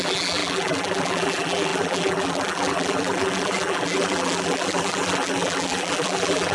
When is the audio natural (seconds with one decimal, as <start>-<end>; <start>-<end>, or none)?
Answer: none